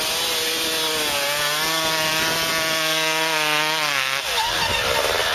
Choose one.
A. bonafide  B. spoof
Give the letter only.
A